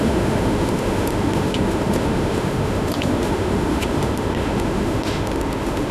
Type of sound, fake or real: fake